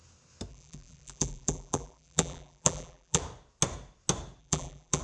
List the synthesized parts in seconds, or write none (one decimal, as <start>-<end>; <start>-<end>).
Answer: 0.5-3.2; 4.4-5.0